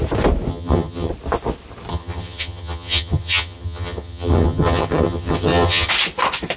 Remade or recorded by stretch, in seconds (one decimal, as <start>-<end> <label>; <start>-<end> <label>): 0.0-0.5 recorded; 0.5-1.1 remade; 1.1-1.9 recorded; 1.9-5.9 remade; 5.9-6.6 recorded